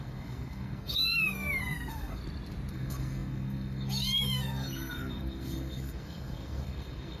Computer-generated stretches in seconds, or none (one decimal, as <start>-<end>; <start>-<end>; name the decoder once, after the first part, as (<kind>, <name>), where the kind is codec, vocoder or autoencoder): 0.0-2.2 (codec, SNAC); 2.7-7.2